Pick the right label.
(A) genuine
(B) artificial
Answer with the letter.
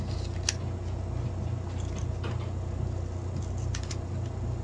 A